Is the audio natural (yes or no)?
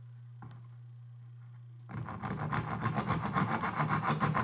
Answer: yes